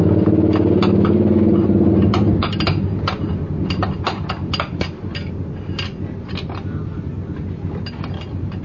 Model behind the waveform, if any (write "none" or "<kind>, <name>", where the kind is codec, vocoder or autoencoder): none